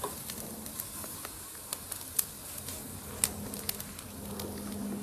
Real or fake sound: real